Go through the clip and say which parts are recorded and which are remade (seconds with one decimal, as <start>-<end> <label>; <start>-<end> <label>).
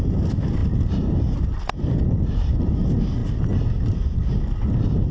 0.0-5.1 recorded